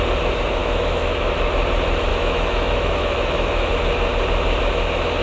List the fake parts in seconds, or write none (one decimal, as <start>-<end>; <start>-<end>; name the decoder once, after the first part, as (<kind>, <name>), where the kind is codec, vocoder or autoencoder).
0.6-1.5 (autoencoder, DAC-VAE); 2.1-3.7